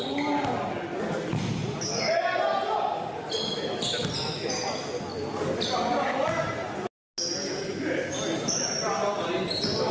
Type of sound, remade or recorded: recorded